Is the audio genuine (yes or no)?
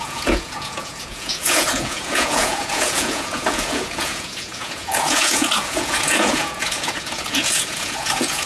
no